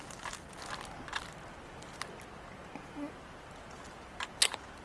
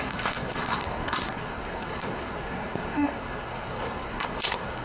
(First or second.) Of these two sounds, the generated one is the second